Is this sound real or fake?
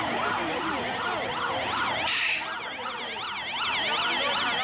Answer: real